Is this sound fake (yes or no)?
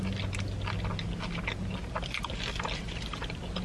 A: no